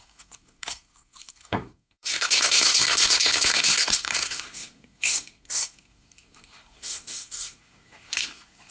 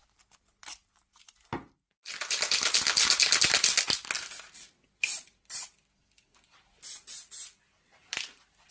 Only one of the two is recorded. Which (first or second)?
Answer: second